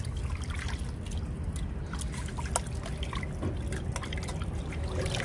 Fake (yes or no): no